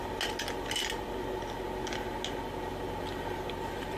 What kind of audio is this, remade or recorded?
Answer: recorded